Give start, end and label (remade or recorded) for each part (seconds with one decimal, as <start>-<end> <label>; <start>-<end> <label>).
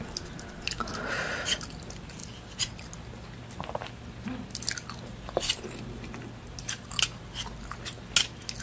0.0-8.6 recorded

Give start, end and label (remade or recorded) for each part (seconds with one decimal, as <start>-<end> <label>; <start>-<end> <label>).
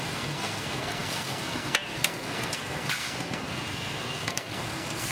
0.0-5.1 remade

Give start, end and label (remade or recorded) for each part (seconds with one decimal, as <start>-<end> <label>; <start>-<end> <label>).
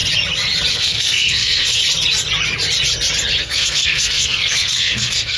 0.0-0.7 recorded; 0.7-1.8 remade; 1.8-3.4 recorded; 3.4-5.4 remade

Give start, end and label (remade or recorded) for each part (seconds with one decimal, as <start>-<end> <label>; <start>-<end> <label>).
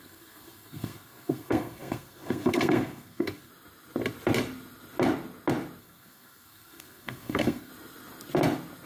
0.0-3.5 remade; 3.5-5.8 recorded; 5.8-7.7 remade; 7.7-8.9 recorded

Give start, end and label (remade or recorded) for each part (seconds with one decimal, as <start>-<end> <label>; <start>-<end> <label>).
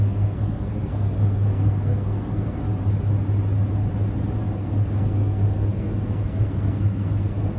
0.0-2.6 remade; 2.6-4.6 recorded; 4.6-7.6 remade